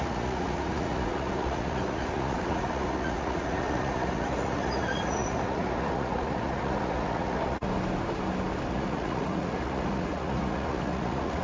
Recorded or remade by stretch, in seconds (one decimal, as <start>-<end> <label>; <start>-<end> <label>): 0.0-7.7 remade; 7.7-8.7 recorded; 8.7-11.4 remade